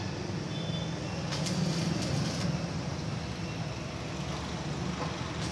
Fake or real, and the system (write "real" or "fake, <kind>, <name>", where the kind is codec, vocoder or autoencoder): real